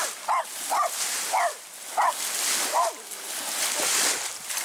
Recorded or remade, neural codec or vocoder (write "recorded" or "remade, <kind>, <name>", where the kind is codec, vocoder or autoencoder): recorded